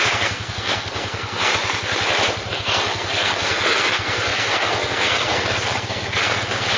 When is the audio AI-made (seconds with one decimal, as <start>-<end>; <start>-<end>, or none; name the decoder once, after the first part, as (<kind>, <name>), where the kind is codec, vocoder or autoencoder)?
0.0-1.5 (codec, SNAC); 2.5-6.8